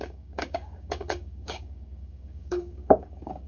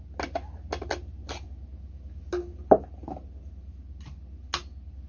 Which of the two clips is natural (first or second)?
second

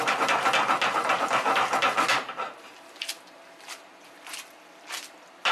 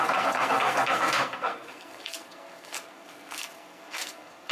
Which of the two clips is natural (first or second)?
first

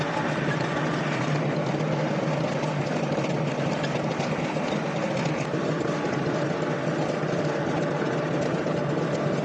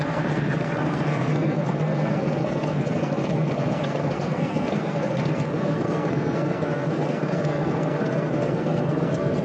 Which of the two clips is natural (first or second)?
first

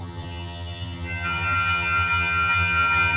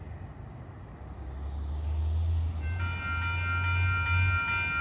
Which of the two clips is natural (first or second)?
second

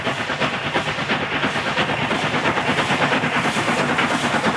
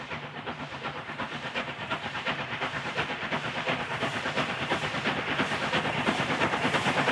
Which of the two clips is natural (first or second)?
first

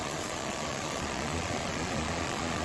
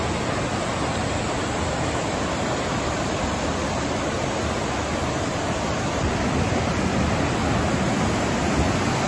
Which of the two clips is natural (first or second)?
second